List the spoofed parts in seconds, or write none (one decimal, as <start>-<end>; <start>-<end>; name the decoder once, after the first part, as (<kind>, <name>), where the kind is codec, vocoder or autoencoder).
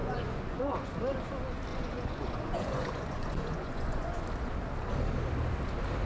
0.0-0.9 (vocoder, Vocos); 1.7-4.2